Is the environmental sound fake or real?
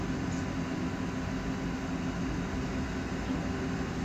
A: real